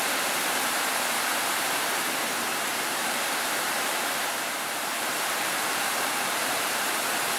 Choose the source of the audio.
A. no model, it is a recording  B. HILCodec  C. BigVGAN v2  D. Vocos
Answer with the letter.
C